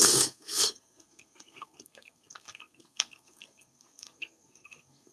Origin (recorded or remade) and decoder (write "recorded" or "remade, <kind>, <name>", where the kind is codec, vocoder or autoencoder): remade, codec, SNAC